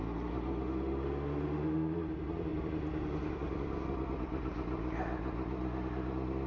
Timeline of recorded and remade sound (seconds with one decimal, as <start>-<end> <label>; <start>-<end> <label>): 0.0-6.5 recorded